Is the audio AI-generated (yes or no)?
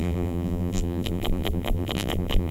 yes